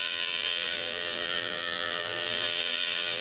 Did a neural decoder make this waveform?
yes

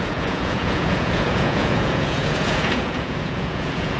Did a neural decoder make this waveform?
yes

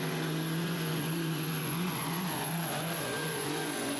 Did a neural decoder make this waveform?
yes